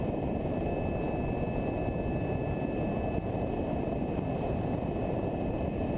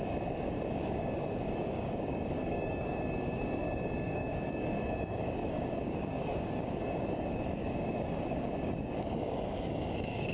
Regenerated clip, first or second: second